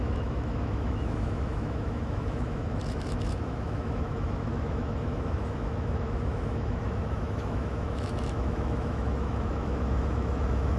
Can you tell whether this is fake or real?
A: fake